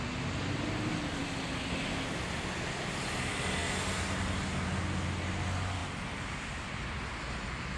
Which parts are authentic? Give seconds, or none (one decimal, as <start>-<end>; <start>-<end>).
0.0-7.8